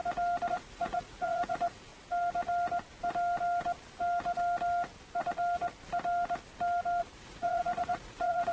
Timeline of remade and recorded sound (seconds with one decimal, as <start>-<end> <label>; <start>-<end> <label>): 0.0-0.5 recorded; 0.5-1.9 remade; 1.9-7.0 recorded; 7.0-8.5 remade